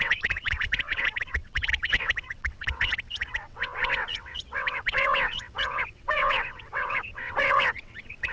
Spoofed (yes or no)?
yes